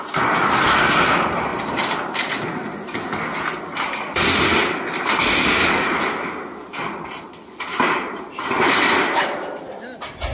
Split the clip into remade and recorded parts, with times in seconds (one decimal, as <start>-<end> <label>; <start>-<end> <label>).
0.0-10.3 recorded